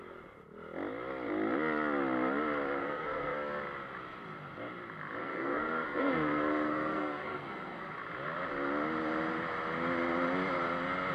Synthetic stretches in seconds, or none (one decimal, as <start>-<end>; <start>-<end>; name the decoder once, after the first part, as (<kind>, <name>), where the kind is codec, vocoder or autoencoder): 2.8-3.6 (codec, SNAC); 5.2-7.9

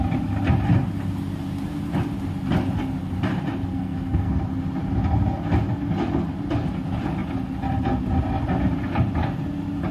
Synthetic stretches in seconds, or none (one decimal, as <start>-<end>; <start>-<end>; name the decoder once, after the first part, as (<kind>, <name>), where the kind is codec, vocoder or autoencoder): 3.7-4.4 (codec, SNAC)

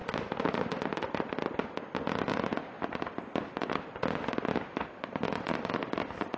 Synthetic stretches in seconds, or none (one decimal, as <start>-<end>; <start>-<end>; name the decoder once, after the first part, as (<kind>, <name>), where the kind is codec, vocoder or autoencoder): none

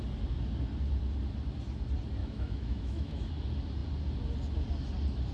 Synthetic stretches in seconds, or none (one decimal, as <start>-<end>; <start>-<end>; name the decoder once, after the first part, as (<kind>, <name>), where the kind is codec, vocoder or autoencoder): 2.2-3.3 (autoencoder, DAC-VAE)

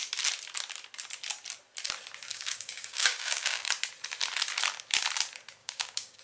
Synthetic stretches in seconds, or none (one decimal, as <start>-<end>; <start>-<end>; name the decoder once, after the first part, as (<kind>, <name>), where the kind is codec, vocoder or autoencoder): 2.3-3.7 (codec, DAC); 5.6-6.2

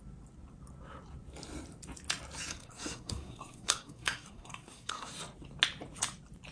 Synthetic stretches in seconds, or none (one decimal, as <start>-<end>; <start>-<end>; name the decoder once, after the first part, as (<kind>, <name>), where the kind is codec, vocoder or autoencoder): 2.5-5.1 (codec, SNAC)

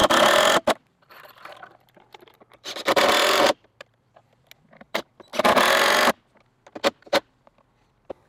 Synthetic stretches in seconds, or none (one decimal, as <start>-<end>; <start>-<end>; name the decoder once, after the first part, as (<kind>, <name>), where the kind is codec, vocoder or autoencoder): 0.0-4.4 (vocoder, BigVGAN v2); 5.3-6.1

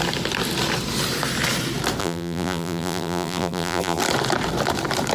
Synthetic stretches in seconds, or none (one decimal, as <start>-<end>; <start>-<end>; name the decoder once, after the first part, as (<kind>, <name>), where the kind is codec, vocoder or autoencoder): 2.0-4.0 (vocoder, BigVGAN v2)